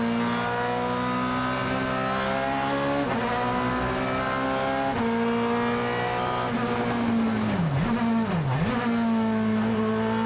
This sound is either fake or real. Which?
real